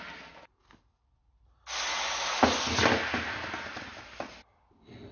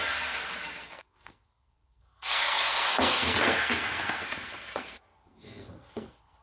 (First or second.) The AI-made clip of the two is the second